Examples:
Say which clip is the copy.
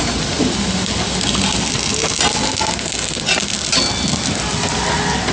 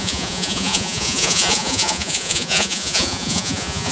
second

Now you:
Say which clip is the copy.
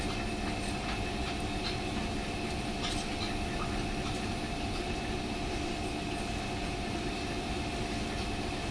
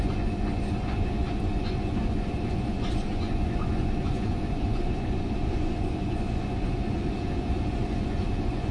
second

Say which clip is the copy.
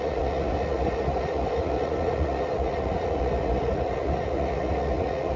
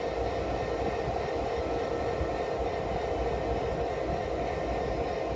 first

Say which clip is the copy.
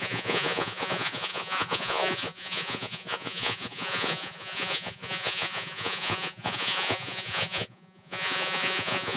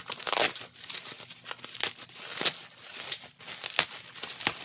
first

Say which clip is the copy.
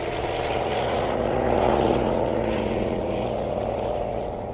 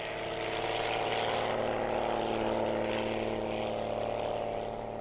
first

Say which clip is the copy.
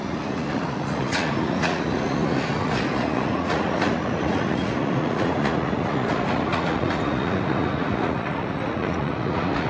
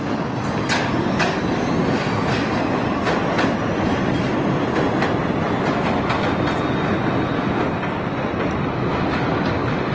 first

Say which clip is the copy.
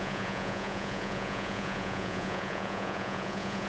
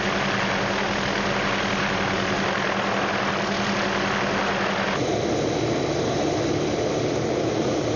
first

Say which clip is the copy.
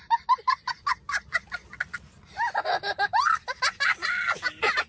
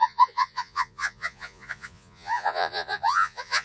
second